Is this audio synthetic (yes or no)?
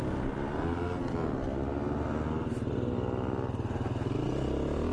no